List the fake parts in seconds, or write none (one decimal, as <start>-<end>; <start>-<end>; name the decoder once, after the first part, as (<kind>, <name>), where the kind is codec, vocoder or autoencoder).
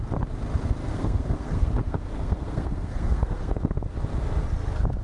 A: 0.9-3.6 (codec, SNAC)